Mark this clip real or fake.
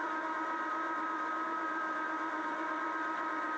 fake